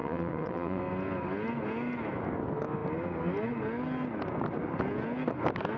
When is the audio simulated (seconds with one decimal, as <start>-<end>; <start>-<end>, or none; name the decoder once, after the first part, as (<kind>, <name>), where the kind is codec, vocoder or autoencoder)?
0.0-0.8 (vocoder, WaveNeXt)

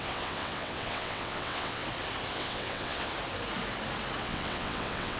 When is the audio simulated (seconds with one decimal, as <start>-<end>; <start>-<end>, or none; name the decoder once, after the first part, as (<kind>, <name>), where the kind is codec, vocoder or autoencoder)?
0.0-1.8 (vocoder, WaveNeXt); 2.3-3.1; 4.2-5.2

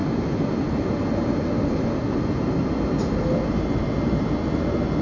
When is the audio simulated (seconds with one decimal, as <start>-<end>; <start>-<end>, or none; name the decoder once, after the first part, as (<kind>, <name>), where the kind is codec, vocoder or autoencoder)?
none

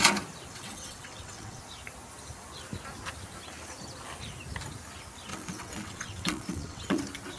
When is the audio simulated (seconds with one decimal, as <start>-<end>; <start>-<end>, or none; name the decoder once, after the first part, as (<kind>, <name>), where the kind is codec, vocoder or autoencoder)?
0.5-1.6 (vocoder, WaveNeXt); 5.3-7.0

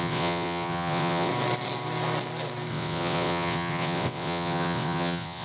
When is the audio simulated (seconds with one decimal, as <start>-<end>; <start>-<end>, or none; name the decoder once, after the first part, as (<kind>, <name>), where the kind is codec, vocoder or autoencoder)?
0.0-1.3 (vocoder, WaveNeXt); 2.7-5.4